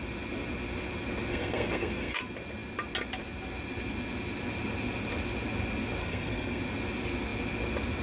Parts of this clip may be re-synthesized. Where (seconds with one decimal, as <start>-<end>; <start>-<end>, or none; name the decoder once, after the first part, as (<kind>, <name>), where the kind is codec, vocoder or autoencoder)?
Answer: 1.3-2.2 (codec, SNAC); 6.0-6.6